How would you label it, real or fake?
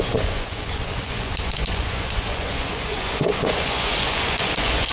fake